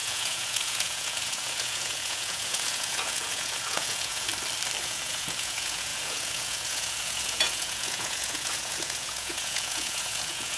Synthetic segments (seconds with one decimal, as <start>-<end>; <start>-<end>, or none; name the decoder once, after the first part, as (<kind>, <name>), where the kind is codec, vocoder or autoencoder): 0.0-4.3 (vocoder, Vocos); 4.8-10.6